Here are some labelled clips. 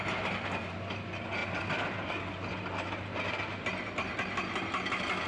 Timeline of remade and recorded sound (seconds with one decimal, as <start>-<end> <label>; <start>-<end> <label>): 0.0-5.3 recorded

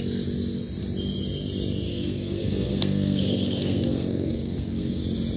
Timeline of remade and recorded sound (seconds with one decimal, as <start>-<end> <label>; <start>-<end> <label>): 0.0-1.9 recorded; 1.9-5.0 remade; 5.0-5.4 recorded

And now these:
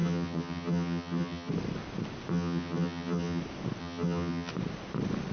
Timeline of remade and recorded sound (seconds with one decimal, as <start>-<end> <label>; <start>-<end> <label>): 0.0-1.5 remade; 1.5-2.3 recorded; 2.3-3.4 remade; 3.4-3.8 recorded; 3.8-4.5 remade; 4.5-5.3 recorded

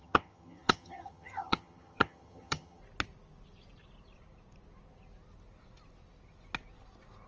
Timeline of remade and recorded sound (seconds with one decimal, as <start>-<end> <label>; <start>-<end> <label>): 0.0-2.8 remade; 2.8-7.3 recorded

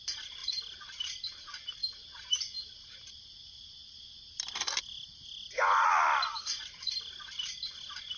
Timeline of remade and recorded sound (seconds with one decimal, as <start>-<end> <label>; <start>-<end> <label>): 0.0-8.2 recorded